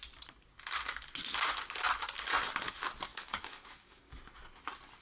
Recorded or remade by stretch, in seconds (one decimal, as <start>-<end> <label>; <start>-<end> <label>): 0.0-3.1 recorded; 3.1-4.1 remade; 4.1-5.0 recorded